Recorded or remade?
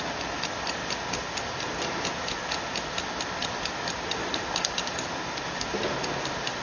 recorded